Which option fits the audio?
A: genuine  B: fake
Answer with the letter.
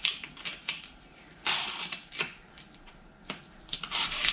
B